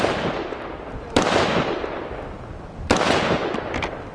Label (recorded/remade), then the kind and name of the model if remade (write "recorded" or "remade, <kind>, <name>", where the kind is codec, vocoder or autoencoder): recorded